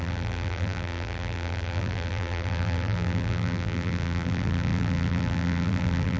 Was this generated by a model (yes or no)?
yes